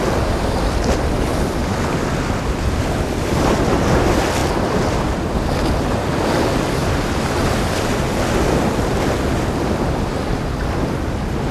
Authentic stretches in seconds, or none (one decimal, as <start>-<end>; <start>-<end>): 0.0-1.3; 3.0-4.4; 5.5-6.8; 8.0-11.5